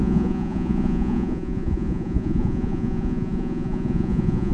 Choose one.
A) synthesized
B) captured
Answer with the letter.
A